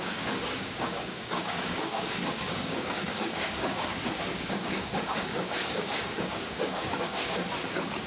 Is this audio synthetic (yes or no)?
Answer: yes